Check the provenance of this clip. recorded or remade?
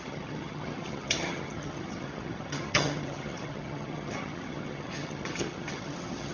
remade